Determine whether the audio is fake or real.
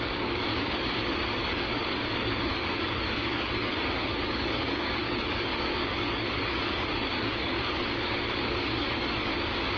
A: fake